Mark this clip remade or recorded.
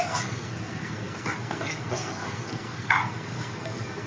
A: remade